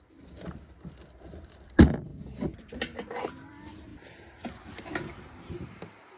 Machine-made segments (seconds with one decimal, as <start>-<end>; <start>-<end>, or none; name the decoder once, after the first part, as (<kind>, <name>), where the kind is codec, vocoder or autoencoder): none